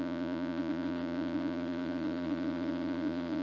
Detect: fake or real fake